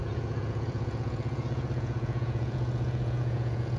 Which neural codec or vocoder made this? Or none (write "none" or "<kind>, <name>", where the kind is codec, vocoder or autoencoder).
vocoder, Vocos